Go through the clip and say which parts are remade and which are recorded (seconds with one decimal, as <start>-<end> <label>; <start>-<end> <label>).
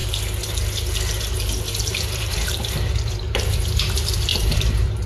0.0-1.9 recorded; 1.9-3.6 remade; 3.6-4.3 recorded; 4.3-5.1 remade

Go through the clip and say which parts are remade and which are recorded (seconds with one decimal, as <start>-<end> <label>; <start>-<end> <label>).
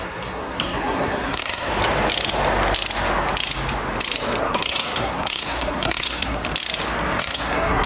0.0-1.7 remade; 1.7-4.4 recorded; 4.4-6.4 remade; 6.4-7.2 recorded; 7.2-7.9 remade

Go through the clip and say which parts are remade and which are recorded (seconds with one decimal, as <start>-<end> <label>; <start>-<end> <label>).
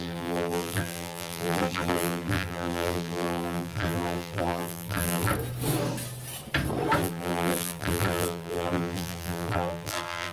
0.0-5.3 remade; 5.3-7.0 recorded; 7.0-10.3 remade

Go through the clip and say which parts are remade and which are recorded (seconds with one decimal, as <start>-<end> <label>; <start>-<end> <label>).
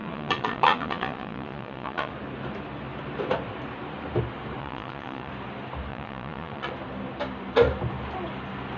0.0-2.1 remade; 2.1-4.6 recorded; 4.6-5.3 remade; 5.3-5.9 recorded; 5.9-6.7 remade; 6.7-8.8 recorded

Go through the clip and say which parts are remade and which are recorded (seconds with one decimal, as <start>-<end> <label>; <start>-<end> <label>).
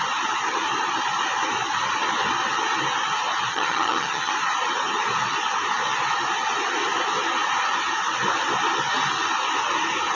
0.0-3.5 recorded; 3.5-4.3 remade; 4.3-10.1 recorded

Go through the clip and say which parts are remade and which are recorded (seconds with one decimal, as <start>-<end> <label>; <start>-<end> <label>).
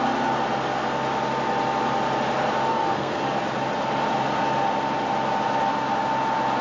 0.0-2.7 recorded; 2.7-3.2 remade; 3.2-6.6 recorded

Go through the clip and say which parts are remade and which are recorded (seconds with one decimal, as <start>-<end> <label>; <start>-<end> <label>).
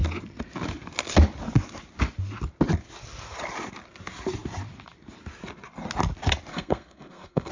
0.0-6.5 recorded; 6.5-7.5 remade